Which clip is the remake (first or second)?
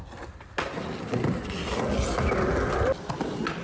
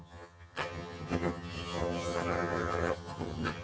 second